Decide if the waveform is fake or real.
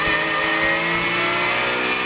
real